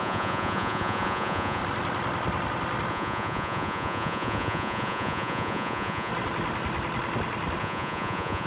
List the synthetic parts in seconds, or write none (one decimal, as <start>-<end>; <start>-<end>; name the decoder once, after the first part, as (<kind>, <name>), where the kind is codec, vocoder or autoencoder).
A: 0.0-1.6 (vocoder, Vocos); 2.9-6.1; 7.6-8.5